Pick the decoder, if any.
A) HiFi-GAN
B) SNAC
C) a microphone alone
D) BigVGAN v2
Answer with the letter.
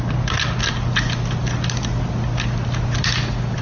C